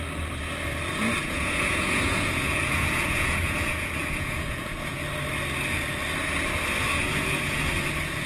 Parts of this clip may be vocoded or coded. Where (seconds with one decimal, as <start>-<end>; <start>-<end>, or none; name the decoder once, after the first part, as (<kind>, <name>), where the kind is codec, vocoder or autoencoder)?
1.2-5.0 (vocoder, Vocos); 6.9-7.7